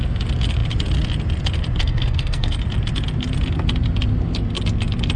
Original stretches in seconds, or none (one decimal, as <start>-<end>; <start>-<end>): 0.0-1.8; 2.6-5.2

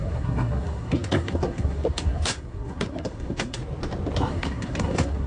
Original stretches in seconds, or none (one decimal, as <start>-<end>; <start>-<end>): 3.6-4.3